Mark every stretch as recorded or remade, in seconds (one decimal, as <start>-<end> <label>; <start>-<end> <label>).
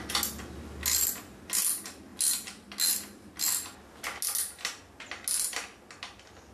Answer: 0.0-6.5 recorded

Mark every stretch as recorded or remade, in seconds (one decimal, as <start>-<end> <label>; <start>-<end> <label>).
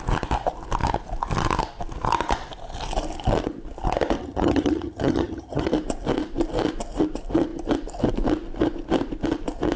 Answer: 0.0-4.2 recorded; 4.2-5.7 remade; 5.7-9.8 recorded